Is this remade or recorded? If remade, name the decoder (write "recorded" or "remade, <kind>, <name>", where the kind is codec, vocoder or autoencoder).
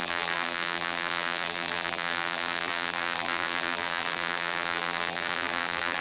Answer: remade, vocoder, BigVGAN v2